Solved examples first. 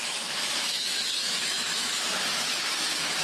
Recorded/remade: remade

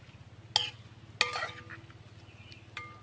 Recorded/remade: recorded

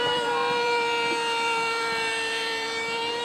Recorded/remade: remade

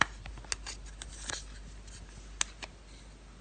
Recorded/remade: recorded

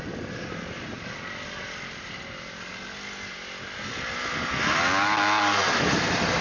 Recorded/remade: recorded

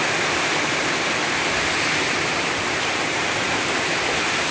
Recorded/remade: remade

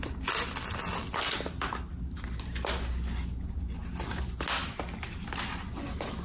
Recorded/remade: recorded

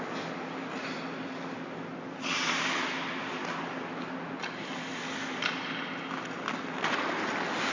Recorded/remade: recorded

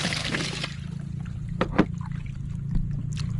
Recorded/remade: recorded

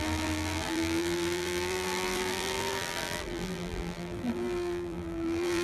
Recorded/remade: remade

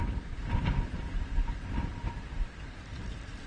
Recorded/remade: recorded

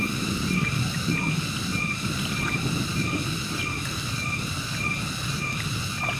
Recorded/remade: recorded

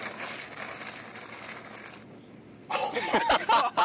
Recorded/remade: recorded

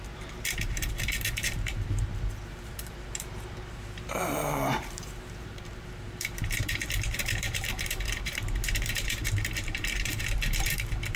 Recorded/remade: remade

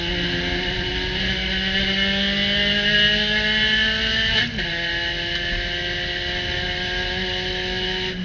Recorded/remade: recorded